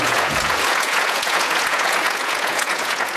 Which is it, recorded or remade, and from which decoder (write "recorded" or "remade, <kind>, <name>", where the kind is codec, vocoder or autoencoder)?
remade, vocoder, Vocos